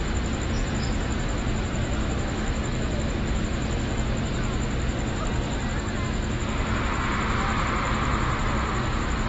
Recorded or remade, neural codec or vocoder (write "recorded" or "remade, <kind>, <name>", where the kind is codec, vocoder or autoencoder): recorded